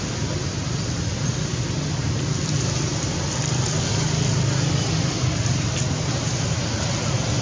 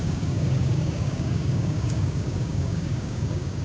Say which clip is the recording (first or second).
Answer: first